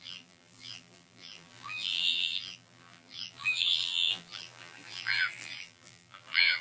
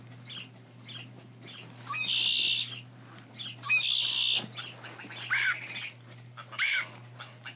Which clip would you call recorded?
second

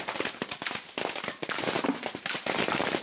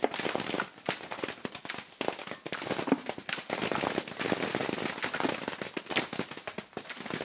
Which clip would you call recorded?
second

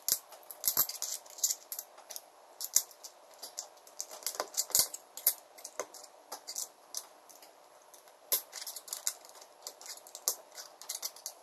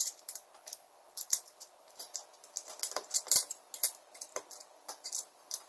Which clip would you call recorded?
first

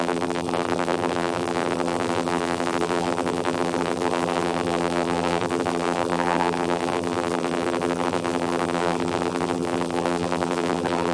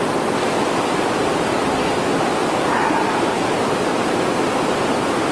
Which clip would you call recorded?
second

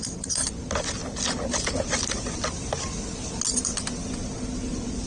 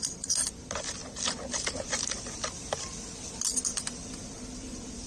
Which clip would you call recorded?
first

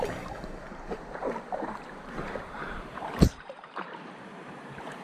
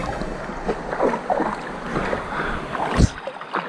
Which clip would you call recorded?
second